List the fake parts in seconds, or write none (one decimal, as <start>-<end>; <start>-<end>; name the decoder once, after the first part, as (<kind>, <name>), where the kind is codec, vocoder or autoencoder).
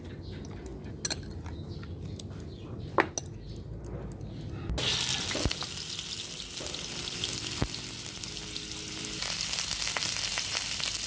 none